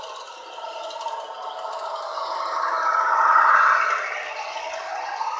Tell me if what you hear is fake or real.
real